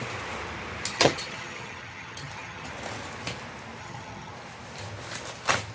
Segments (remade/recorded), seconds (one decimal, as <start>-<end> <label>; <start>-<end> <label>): 0.0-0.9 recorded; 0.9-2.7 remade; 2.7-3.8 recorded; 3.8-4.3 remade; 4.3-5.7 recorded